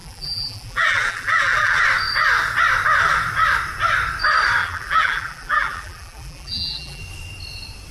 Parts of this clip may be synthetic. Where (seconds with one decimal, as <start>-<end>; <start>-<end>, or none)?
0.0-1.8; 4.6-7.0

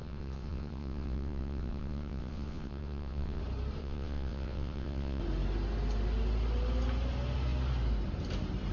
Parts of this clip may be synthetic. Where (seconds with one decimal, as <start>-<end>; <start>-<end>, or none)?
0.0-3.4; 3.8-5.2

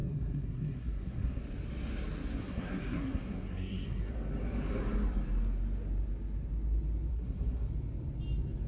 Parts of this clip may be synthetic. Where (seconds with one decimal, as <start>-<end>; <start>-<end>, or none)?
0.0-1.4; 2.4-4.1; 7.1-7.7

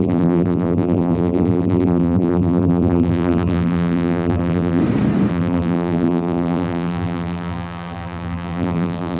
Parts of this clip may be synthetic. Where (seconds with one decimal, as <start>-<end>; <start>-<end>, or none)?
0.0-4.8; 5.3-9.2

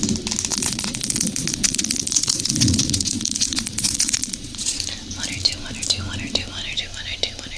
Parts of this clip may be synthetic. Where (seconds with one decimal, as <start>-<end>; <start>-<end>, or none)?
0.5-4.8